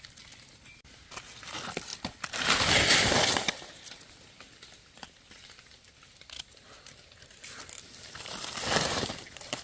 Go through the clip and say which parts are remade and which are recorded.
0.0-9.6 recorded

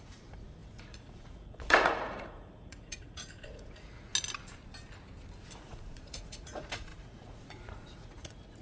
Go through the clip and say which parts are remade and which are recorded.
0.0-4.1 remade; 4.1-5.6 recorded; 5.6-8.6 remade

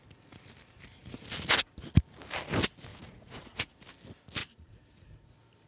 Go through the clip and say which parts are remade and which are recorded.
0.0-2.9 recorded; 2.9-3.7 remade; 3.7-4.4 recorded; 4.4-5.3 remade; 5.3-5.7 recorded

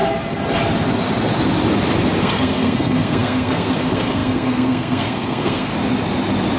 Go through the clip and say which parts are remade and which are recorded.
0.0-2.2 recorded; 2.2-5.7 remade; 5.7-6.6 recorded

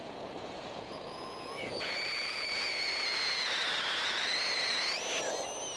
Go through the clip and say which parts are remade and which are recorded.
0.0-3.5 remade; 3.5-5.8 recorded